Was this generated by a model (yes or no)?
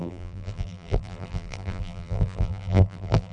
yes